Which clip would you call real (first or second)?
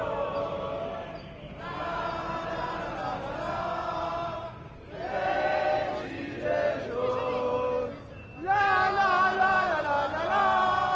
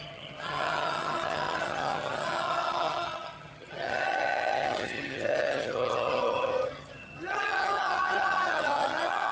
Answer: first